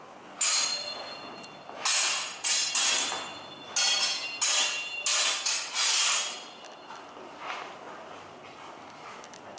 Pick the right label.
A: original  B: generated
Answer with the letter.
A